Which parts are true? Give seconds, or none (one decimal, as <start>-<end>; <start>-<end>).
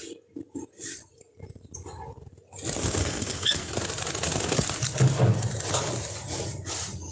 0.0-3.0; 3.7-7.1